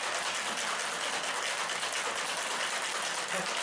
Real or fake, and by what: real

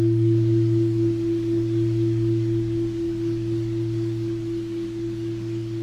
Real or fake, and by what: fake, codec, DAC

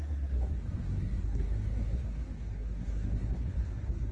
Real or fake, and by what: fake, codec, SNAC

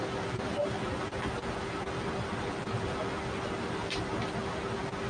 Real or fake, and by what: real